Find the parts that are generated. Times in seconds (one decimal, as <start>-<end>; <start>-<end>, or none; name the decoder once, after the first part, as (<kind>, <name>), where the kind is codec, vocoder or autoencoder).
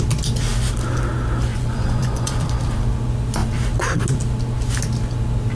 1.5-2.4 (vocoder, Vocos)